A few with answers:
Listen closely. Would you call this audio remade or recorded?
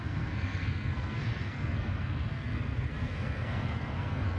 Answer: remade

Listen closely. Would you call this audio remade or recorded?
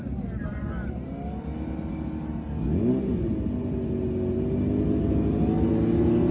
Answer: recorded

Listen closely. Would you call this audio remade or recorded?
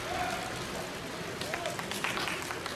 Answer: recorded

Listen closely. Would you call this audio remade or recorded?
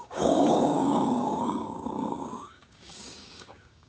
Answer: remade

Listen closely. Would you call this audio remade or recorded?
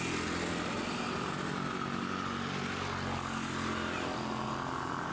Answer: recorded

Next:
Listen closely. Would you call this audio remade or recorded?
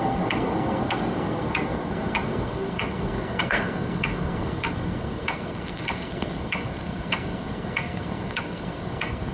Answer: remade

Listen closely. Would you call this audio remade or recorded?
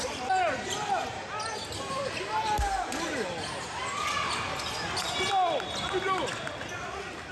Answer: recorded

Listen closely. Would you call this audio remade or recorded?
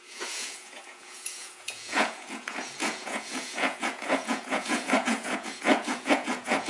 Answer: remade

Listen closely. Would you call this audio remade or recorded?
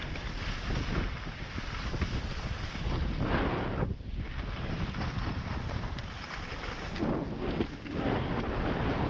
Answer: recorded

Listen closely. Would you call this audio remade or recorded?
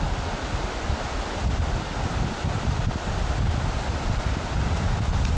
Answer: recorded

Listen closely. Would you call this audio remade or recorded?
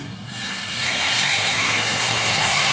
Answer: remade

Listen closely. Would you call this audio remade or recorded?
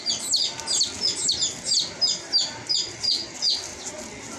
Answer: recorded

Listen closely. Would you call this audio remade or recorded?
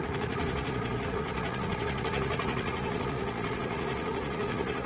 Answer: remade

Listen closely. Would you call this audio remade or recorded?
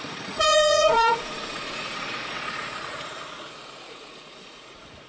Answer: remade